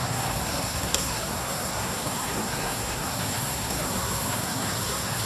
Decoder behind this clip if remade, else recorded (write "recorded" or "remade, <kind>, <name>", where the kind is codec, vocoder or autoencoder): remade, codec, SNAC